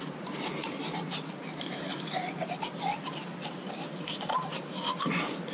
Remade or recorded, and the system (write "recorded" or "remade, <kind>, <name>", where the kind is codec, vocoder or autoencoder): recorded